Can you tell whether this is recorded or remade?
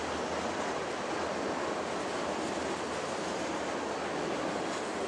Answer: recorded